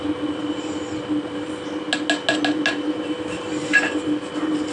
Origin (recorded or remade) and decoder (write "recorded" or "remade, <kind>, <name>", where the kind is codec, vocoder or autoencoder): recorded